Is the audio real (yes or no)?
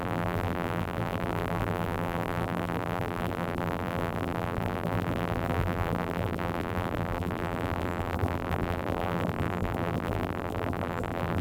no